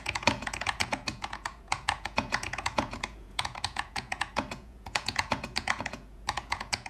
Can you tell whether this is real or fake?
fake